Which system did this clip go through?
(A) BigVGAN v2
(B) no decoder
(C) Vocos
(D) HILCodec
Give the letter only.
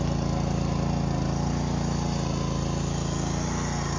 B